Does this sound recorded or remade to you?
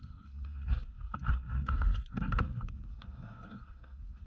remade